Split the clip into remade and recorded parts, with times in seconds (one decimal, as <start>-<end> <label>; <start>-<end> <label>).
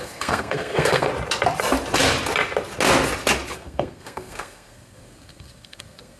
0.0-1.1 remade; 1.1-3.5 recorded; 3.5-6.2 remade